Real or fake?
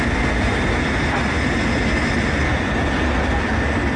real